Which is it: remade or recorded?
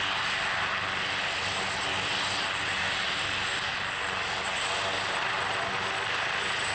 recorded